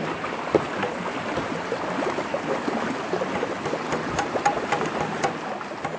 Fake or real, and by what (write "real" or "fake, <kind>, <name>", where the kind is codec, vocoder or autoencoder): real